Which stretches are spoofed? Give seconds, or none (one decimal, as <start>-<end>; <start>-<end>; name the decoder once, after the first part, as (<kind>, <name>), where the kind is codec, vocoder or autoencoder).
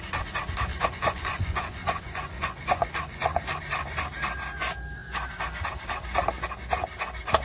0.7-3.6 (vocoder, Vocos)